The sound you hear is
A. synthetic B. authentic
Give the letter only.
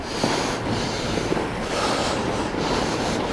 A